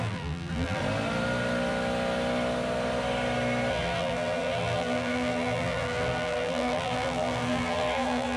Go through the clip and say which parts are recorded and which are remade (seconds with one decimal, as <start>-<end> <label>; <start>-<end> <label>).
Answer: 0.0-0.8 remade; 0.8-3.7 recorded; 3.7-8.4 remade